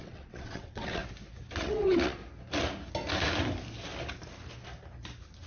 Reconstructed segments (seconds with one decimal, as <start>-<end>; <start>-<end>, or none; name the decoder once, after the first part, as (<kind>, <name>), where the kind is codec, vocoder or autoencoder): 0.0-1.0 (vocoder, WaveNeXt); 1.6-2.2